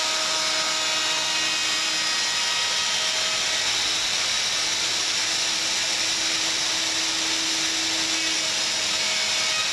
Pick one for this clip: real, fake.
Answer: real